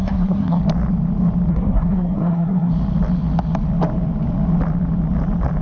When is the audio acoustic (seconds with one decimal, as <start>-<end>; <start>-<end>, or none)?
0.6-1.5; 2.7-5.6